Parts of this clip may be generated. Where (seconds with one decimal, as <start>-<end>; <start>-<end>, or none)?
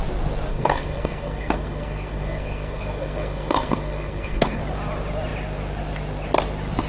0.5-4.6